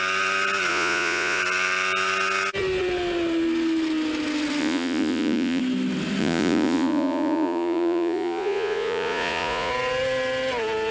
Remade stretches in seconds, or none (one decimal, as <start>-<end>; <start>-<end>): 0.7-1.4; 4.6-5.6; 6.2-9.7

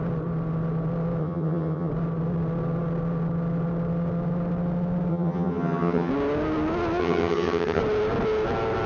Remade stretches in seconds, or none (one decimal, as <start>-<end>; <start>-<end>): 1.2-1.9; 5.1-6.1; 7.0-7.8

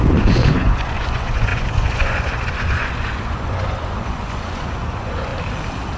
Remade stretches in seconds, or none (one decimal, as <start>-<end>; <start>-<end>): 0.0-5.3

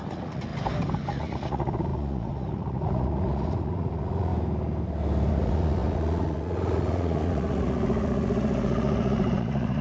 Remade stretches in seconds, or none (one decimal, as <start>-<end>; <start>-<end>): 0.0-0.5; 1.1-4.3; 5.3-9.8

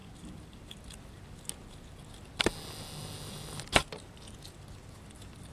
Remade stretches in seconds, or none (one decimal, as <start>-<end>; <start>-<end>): 0.0-0.8